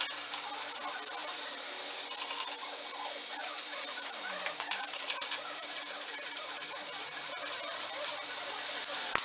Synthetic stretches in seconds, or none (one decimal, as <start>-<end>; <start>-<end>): 1.2-1.7; 3.4-8.1